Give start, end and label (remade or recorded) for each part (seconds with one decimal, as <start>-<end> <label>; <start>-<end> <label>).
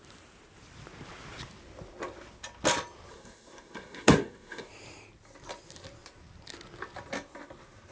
0.0-3.1 recorded; 3.1-4.7 remade; 4.7-7.9 recorded